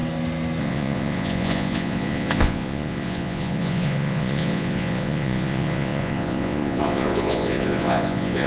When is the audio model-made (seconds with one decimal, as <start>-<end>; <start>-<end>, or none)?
0.6-8.5

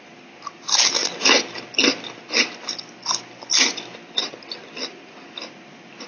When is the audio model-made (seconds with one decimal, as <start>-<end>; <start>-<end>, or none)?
none

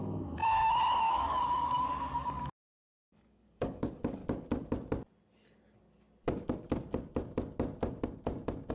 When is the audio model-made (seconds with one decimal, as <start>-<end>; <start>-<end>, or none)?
0.0-4.2

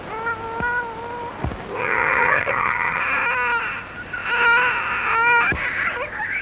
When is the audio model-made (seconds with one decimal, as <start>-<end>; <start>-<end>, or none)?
1.8-3.0

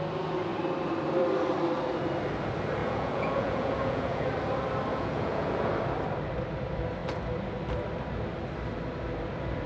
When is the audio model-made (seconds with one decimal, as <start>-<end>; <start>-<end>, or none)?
2.8-4.2; 4.9-5.7